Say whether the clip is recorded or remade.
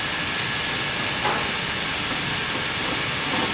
recorded